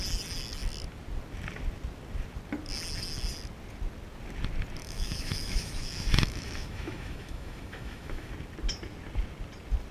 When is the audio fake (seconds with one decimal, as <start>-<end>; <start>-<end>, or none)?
4.8-8.3